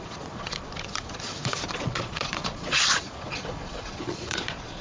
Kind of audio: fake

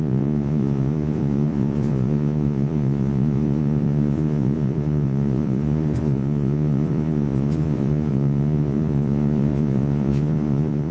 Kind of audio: fake